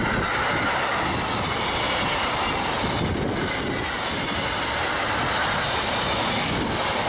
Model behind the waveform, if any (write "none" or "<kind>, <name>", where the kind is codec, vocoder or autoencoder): none